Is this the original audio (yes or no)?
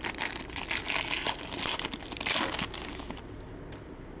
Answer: yes